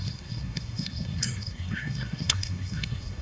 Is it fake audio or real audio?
fake